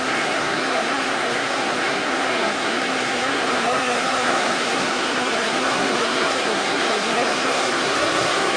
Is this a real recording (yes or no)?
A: no